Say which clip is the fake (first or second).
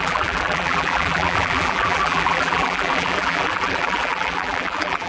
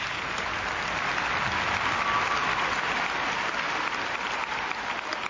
first